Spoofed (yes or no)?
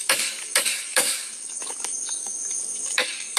yes